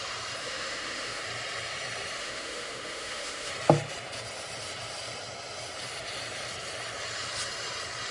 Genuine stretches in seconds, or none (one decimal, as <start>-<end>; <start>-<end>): 0.0-0.4; 1.2-2.2; 3.5-8.1